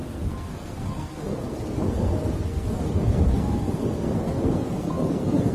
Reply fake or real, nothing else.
fake